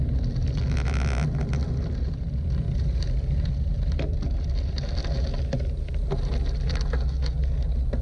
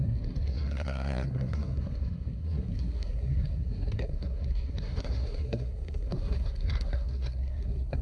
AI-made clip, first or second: second